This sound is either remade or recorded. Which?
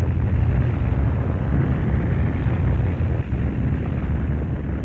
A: recorded